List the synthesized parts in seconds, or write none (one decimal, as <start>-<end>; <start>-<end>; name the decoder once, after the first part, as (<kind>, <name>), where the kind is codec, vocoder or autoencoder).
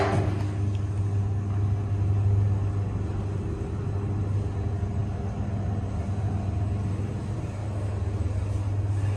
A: none